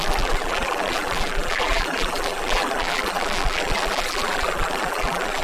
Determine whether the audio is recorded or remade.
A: remade